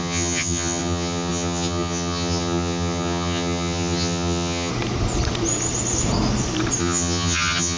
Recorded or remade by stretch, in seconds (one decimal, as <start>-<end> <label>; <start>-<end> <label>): 0.0-4.7 remade; 4.7-6.8 recorded; 6.8-7.8 remade